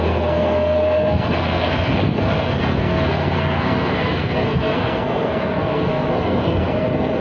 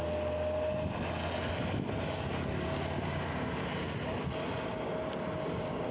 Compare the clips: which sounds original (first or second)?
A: second